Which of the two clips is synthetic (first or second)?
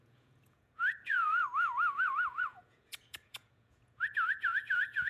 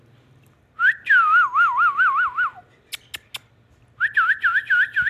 first